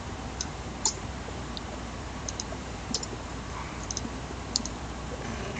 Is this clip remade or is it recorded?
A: remade